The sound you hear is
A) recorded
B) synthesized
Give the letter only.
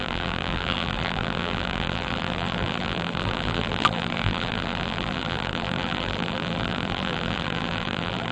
B